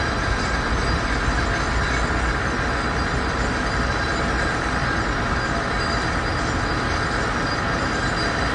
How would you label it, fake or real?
real